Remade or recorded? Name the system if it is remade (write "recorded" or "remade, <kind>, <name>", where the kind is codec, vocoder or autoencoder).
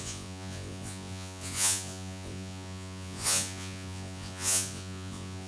remade, vocoder, Vocos